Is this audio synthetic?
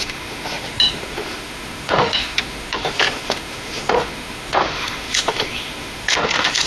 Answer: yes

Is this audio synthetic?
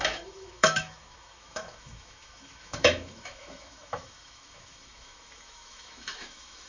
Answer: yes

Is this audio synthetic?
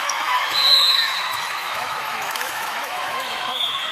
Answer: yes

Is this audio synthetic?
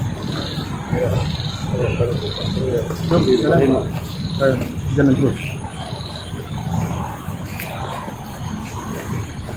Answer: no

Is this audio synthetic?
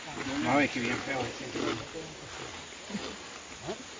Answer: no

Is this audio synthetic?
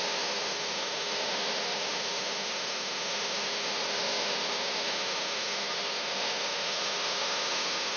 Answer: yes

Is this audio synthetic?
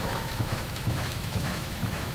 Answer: yes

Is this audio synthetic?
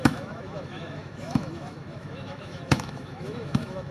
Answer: yes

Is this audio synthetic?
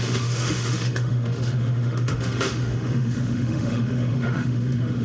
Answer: yes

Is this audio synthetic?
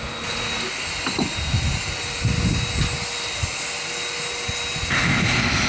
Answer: no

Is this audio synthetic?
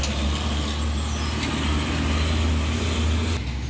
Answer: no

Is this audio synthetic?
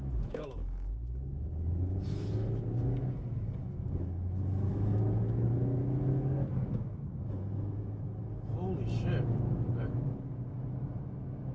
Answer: yes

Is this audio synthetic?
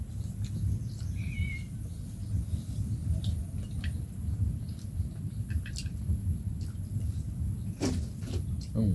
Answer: no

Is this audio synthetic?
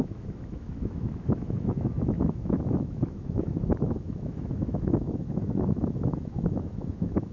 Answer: yes